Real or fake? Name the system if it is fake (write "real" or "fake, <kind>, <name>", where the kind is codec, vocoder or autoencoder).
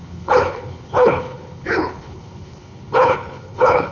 fake, codec, HILCodec